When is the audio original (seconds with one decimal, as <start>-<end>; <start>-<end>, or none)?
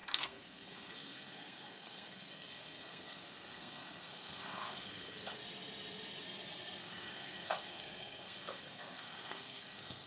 5.4-6.8